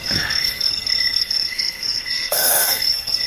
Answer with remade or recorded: remade